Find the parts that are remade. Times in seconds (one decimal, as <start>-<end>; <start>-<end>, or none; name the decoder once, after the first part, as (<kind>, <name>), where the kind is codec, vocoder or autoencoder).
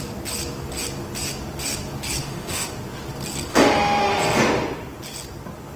2.2-2.7 (autoencoder, DAC-VAE); 3.5-4.2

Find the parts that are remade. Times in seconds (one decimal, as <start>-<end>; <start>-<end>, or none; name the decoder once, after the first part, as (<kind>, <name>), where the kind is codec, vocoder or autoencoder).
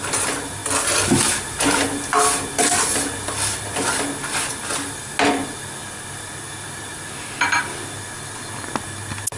none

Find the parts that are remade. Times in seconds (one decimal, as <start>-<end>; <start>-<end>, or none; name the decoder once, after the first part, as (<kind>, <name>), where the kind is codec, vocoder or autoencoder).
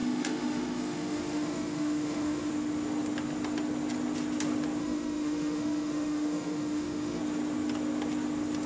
0.0-2.5 (autoencoder, DAC-VAE); 4.8-7.2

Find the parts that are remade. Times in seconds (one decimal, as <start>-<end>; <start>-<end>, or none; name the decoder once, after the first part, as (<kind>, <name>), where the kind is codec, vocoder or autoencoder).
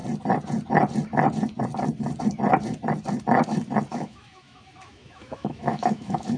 3.9-6.4 (autoencoder, DAC-VAE)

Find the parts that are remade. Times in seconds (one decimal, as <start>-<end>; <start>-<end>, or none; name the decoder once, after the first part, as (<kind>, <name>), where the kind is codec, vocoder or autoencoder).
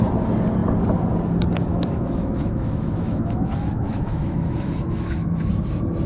1.7-5.4 (autoencoder, DAC-VAE)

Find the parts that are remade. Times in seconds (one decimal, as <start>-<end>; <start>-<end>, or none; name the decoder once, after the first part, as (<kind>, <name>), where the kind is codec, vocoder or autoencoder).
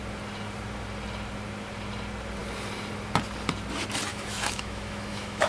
4.1-5.5 (autoencoder, DAC-VAE)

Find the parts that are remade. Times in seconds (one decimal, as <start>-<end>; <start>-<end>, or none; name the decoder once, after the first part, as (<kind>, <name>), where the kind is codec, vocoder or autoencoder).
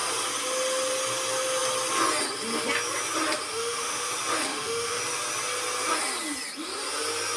3.5-4.1 (autoencoder, DAC-VAE); 4.5-5.0